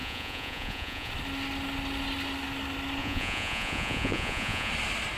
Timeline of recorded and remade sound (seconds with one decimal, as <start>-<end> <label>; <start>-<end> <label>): 0.0-1.1 remade; 1.1-3.0 recorded; 3.0-4.7 remade; 4.7-5.2 recorded